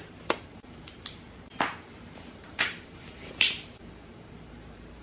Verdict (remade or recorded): remade